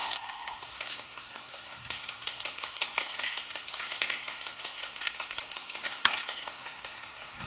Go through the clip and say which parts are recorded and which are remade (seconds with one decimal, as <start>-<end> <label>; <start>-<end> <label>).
0.0-7.5 remade

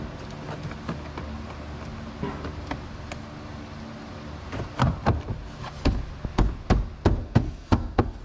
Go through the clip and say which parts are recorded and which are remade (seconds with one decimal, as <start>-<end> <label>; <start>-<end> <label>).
0.0-7.2 recorded; 7.2-8.2 remade

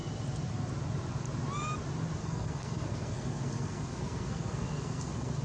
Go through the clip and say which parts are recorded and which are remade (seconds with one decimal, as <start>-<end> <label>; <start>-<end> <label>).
0.0-2.2 recorded; 2.2-5.4 remade

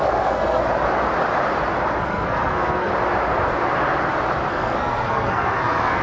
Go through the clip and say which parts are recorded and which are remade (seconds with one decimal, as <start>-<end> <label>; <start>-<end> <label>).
0.0-0.6 remade; 0.6-2.0 recorded; 2.0-2.9 remade; 2.9-4.5 recorded; 4.5-6.0 remade